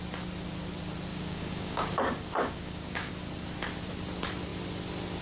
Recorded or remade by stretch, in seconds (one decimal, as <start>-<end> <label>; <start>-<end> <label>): 0.0-1.1 recorded; 1.1-3.1 remade; 3.1-5.2 recorded